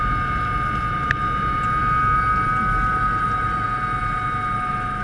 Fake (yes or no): no